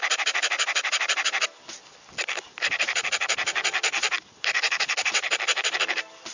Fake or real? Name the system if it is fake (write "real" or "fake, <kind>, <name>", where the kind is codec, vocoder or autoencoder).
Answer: real